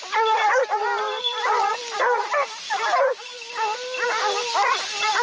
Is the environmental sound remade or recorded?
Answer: recorded